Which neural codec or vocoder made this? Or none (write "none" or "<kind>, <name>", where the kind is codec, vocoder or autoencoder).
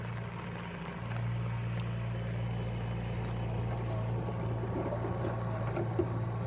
none